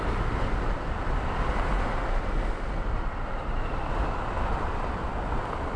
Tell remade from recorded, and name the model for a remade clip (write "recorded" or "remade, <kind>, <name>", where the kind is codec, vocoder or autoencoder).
recorded